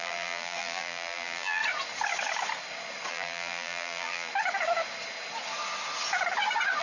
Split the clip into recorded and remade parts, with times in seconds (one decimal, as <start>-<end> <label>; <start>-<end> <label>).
0.0-1.6 remade; 1.6-3.1 recorded; 3.1-4.3 remade; 4.3-6.8 recorded